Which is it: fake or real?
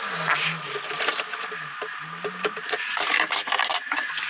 real